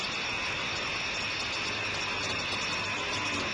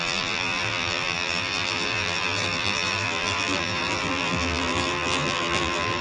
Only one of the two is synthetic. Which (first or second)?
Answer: second